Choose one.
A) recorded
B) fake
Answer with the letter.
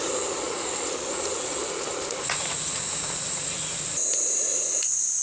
B